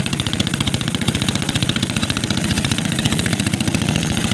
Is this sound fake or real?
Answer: fake